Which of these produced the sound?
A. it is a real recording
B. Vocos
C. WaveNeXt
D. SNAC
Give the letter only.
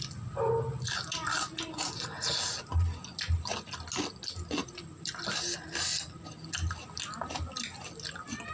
A